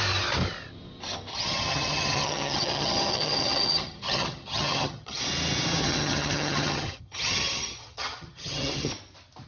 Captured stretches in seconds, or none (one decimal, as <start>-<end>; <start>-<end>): 0.0-1.3; 5.2-5.8; 8.9-9.5